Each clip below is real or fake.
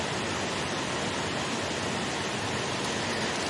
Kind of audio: real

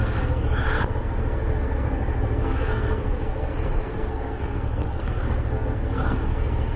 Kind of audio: fake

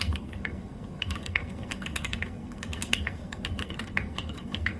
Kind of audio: fake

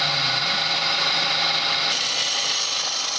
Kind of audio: real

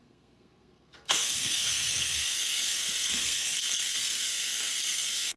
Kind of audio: fake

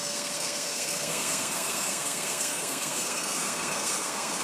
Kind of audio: fake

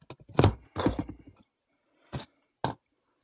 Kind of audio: real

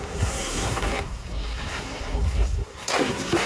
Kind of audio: fake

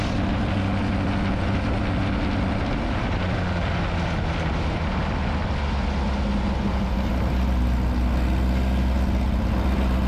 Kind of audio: real